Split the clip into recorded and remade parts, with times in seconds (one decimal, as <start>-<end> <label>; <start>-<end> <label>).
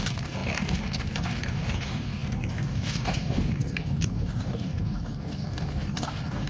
0.0-6.5 remade